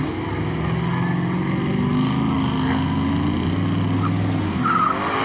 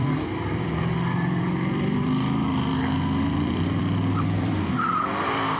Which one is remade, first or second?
second